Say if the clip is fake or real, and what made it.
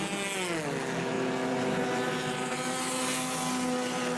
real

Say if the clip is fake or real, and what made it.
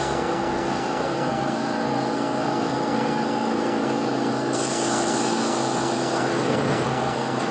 fake, codec, SNAC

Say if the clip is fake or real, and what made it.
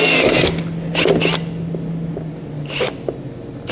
real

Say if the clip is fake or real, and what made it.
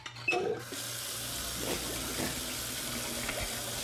real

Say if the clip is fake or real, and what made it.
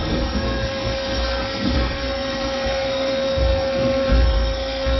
fake, codec, SNAC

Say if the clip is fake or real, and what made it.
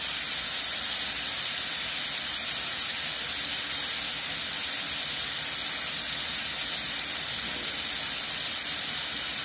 real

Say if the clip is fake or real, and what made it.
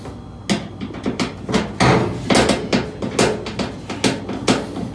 real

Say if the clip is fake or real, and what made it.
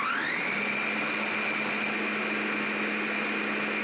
real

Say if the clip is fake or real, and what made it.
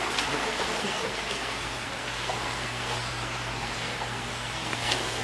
fake, codec, SNAC